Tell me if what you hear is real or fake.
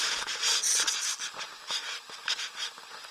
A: real